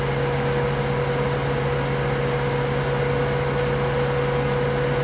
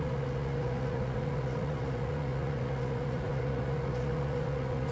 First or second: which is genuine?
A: first